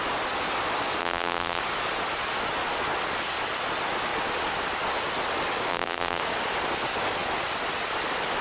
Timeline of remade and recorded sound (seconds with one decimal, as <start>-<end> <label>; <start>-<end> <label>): 0.0-1.0 recorded; 1.0-1.6 remade; 1.6-5.7 recorded; 5.7-6.2 remade; 6.2-8.4 recorded